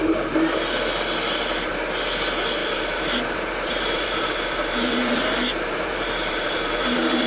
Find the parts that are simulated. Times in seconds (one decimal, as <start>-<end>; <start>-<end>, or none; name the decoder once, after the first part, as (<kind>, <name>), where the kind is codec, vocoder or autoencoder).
2.6-7.3 (vocoder, BigVGAN v2)